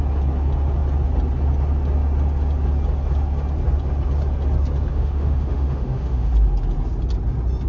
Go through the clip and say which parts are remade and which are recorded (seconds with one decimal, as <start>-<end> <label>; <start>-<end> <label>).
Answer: 0.0-4.9 recorded; 4.9-6.3 remade; 6.3-7.7 recorded